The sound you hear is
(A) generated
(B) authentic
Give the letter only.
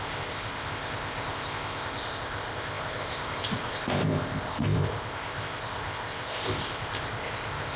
A